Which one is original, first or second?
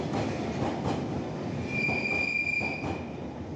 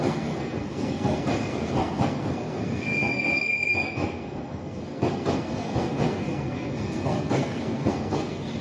first